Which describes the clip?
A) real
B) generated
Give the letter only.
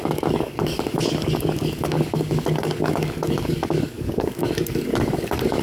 B